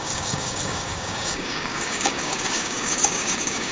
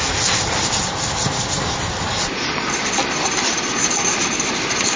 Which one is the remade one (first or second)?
first